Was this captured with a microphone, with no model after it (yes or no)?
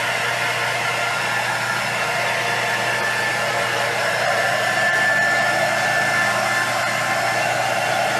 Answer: yes